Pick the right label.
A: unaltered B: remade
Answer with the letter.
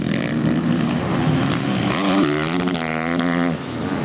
A